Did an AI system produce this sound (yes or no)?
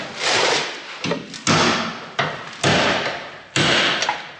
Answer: no